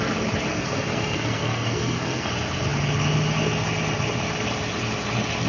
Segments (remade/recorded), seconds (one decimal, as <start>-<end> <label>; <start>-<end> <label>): 0.0-0.5 recorded; 0.5-2.3 remade; 2.3-5.5 recorded